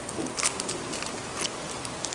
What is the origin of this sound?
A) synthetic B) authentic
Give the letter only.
B